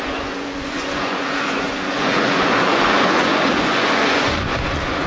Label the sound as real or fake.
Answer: fake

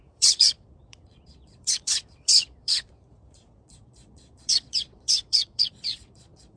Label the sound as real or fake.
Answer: fake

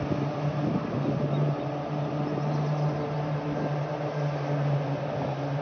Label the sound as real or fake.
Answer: real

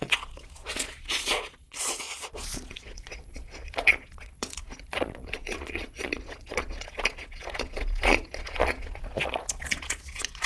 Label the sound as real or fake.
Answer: fake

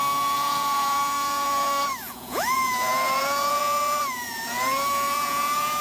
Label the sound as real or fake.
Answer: fake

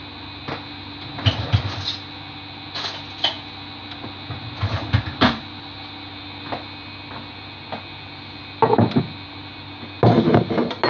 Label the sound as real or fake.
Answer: real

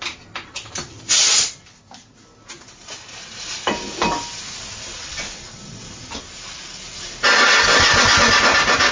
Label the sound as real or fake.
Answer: real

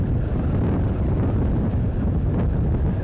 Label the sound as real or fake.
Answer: real